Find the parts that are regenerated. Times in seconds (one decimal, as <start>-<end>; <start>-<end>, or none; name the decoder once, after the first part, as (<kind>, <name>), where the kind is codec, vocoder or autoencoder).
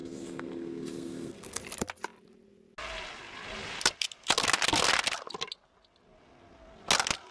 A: 0.0-1.6 (codec, SNAC)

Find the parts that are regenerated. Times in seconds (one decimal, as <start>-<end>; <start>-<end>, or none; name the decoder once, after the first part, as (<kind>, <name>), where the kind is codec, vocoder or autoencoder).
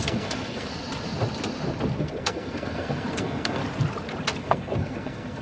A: 0.0-0.7 (codec, SNAC); 2.0-3.6; 4.4-5.4